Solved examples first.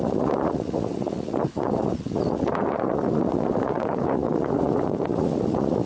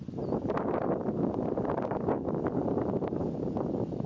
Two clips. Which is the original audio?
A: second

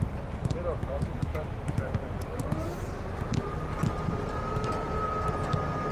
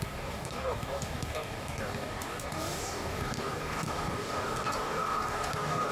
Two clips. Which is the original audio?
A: first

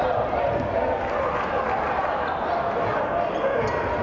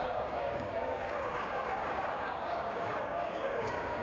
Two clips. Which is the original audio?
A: first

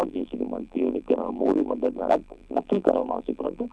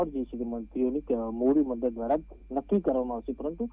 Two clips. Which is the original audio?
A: second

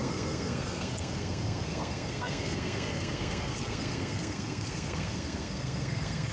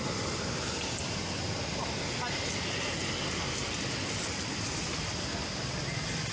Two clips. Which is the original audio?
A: second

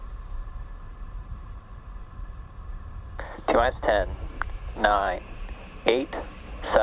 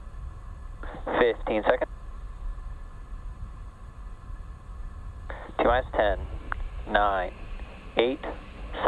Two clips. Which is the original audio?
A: second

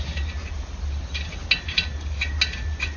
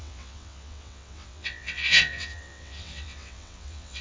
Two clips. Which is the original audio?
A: first